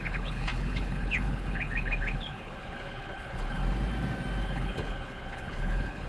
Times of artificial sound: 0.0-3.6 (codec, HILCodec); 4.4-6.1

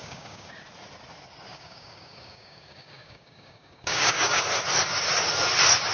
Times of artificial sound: 0.0-0.5 (codec, DAC); 1.5-4.4

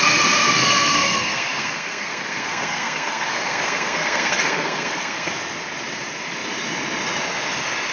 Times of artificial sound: 0.6-5.3 (codec, SNAC)

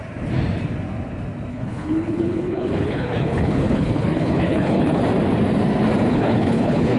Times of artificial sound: 1.5-5.0 (codec, HILCodec); 6.1-7.0